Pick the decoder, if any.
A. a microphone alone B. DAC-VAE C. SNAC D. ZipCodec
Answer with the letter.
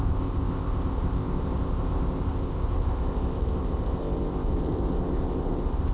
D